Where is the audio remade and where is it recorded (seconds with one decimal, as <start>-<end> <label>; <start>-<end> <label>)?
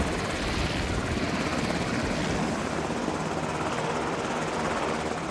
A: 0.0-5.3 recorded